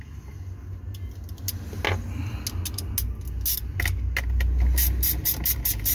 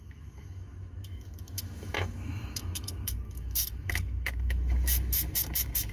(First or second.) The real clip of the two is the first